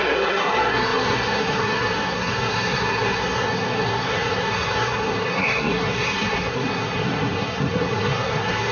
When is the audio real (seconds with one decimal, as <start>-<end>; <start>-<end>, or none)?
none